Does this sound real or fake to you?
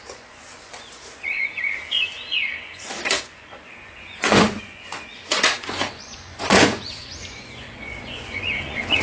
fake